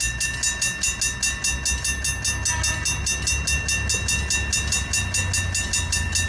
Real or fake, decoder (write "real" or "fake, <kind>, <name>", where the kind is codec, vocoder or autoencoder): real